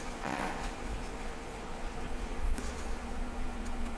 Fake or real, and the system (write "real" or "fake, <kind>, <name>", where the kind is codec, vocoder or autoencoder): fake, vocoder, Vocos